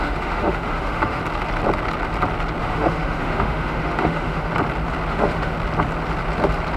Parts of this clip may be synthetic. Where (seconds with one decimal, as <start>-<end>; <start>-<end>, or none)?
0.0-1.2; 2.6-4.5; 5.1-5.5